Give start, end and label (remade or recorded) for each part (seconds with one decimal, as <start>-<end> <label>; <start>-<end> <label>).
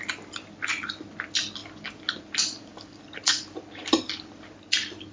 0.0-5.1 recorded